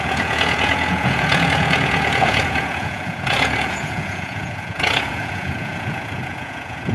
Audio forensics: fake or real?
fake